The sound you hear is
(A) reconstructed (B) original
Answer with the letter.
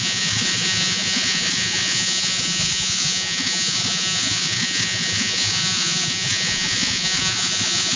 A